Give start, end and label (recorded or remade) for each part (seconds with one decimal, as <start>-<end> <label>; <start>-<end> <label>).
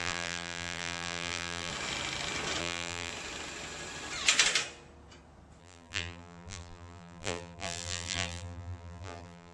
0.0-1.7 remade; 1.7-2.6 recorded; 2.6-3.1 remade; 3.1-5.6 recorded; 5.6-9.5 remade